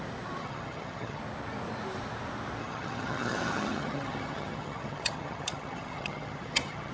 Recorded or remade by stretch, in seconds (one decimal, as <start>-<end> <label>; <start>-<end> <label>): 0.0-0.4 recorded; 0.4-1.2 remade; 1.2-2.6 recorded; 2.6-6.9 remade